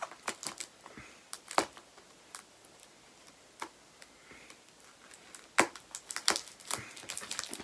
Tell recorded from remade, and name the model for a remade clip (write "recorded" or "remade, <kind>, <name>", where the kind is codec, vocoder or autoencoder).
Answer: recorded